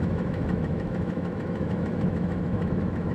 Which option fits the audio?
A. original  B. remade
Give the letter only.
B